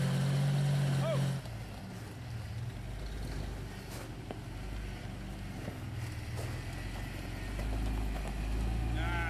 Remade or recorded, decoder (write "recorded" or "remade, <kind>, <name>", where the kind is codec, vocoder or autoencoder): recorded